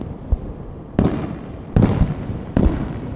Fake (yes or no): yes